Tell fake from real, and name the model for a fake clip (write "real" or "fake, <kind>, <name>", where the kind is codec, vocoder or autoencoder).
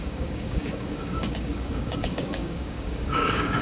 fake, codec, DAC